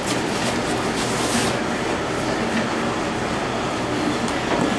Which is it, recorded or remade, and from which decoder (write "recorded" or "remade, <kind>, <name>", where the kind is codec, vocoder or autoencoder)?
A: recorded